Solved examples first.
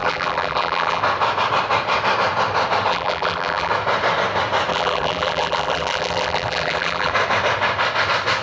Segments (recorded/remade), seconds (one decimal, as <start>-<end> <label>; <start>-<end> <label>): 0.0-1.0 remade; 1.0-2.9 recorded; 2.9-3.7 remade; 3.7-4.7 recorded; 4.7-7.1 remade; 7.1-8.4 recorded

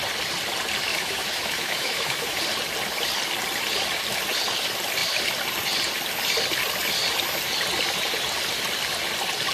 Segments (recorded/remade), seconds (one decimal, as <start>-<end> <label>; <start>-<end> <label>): 0.0-0.9 recorded; 0.9-2.4 remade; 2.4-9.5 recorded

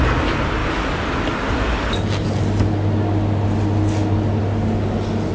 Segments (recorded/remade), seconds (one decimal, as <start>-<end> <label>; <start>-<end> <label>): 0.0-5.3 recorded

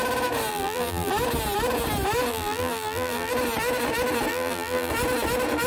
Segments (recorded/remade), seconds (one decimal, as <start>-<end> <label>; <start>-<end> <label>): 0.0-0.5 recorded; 0.5-1.1 remade; 1.1-2.3 recorded; 2.3-3.3 remade; 3.3-4.3 recorded; 4.3-4.9 remade; 4.9-5.7 recorded

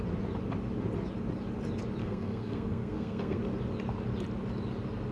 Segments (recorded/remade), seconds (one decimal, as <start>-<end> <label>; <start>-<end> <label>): 0.0-2.0 recorded; 2.0-3.4 remade; 3.4-5.1 recorded